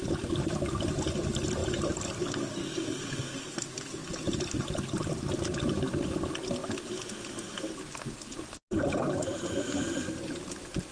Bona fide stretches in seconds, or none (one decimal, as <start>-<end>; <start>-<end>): 0.0-1.6; 2.3-10.9